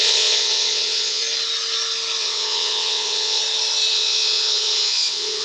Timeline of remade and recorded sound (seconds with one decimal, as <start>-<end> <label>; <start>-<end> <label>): 0.0-1.2 remade; 1.2-2.2 recorded; 2.2-3.4 remade; 3.4-3.9 recorded; 3.9-5.4 remade